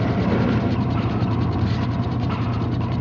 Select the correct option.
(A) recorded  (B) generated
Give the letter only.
B